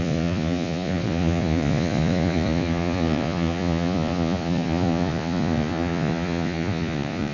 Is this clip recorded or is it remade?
remade